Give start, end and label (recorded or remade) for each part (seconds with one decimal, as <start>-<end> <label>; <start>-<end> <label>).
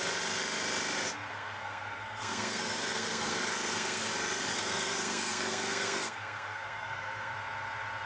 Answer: 0.0-1.3 recorded; 1.3-4.1 remade; 4.1-4.5 recorded; 4.5-7.3 remade; 7.3-8.1 recorded